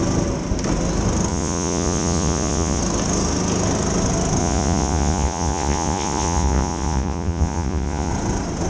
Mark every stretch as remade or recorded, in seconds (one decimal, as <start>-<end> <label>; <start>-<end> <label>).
0.0-1.3 recorded; 1.3-2.8 remade; 2.8-4.4 recorded; 4.4-8.1 remade; 8.1-8.7 recorded